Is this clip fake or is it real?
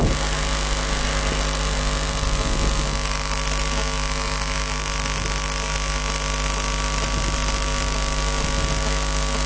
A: real